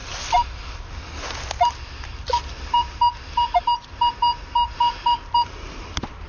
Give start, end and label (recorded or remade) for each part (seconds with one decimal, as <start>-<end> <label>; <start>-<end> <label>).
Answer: 0.0-0.8 remade; 0.8-6.3 recorded